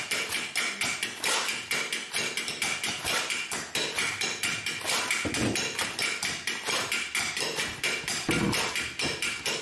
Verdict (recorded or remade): recorded